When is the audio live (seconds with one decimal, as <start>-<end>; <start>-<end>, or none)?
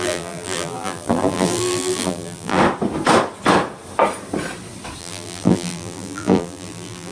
2.6-5.0